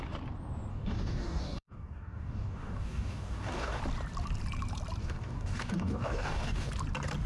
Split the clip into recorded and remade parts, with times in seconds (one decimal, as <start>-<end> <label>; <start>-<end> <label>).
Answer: 0.0-0.7 recorded; 0.7-3.8 remade; 3.8-5.0 recorded; 5.0-6.7 remade; 6.7-7.3 recorded